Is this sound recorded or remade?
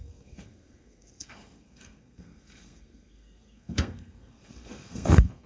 remade